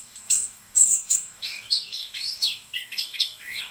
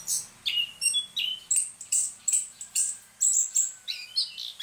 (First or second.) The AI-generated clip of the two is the first